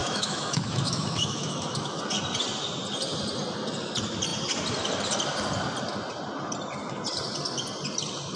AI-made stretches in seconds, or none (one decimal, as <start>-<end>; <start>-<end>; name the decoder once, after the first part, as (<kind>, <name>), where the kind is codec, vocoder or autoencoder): 0.0-2.0 (autoencoder, DAC-VAE)